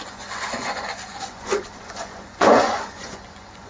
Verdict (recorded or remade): remade